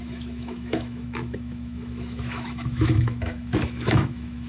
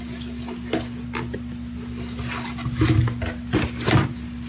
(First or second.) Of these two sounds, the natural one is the second